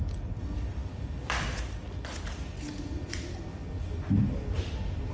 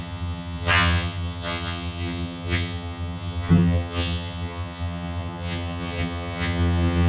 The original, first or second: first